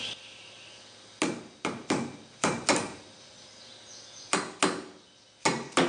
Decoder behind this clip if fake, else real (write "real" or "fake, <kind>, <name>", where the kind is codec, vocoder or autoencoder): real